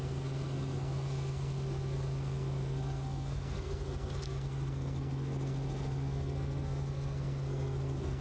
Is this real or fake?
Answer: fake